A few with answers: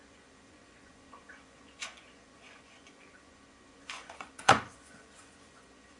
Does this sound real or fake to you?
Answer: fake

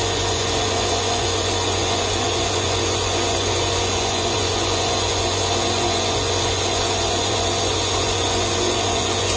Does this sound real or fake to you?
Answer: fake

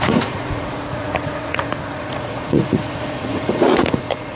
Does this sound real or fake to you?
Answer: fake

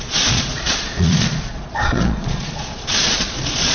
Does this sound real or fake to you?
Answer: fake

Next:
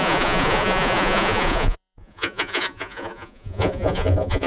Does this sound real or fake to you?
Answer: fake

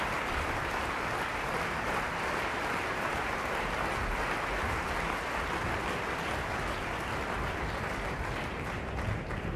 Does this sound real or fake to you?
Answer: real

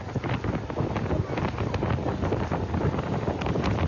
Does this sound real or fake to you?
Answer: real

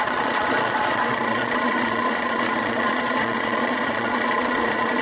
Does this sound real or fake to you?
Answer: fake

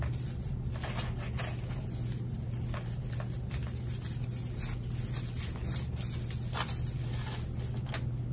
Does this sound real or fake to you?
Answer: real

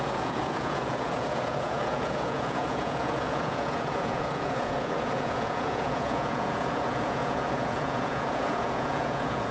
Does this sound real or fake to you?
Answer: fake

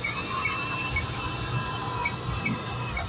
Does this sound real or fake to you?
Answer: real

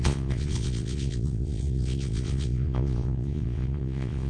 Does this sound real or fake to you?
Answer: fake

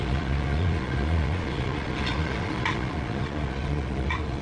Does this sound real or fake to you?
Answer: fake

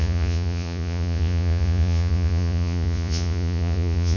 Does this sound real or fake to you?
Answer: fake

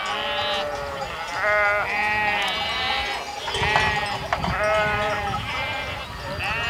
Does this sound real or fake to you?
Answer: real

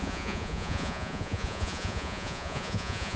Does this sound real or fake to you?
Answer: fake